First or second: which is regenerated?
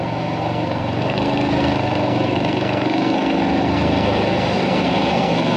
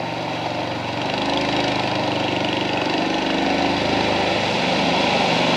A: first